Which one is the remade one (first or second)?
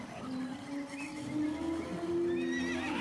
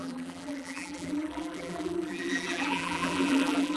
second